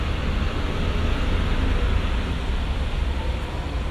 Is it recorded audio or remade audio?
recorded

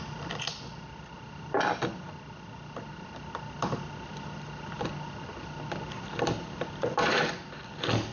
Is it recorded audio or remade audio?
recorded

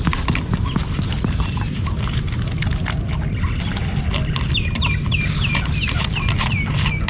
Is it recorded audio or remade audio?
recorded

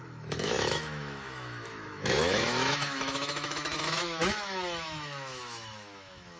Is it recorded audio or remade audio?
remade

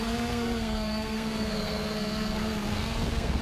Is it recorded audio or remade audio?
remade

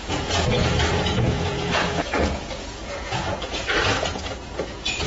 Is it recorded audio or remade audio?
remade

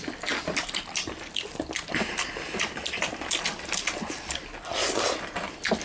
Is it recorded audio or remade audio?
recorded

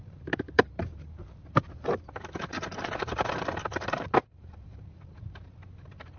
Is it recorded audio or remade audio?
remade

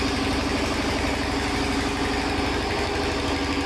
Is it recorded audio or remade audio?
recorded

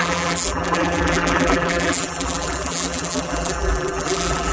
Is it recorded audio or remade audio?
remade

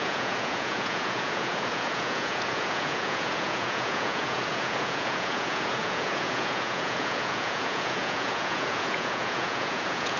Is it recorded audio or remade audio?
remade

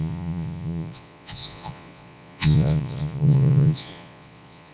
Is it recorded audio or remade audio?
remade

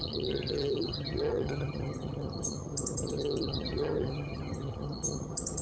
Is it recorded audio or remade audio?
remade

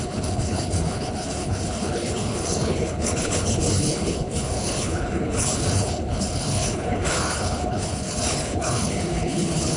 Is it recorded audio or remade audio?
remade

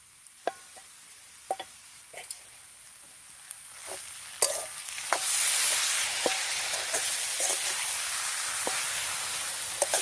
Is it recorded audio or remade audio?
recorded